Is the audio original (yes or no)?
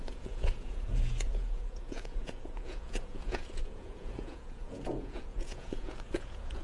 no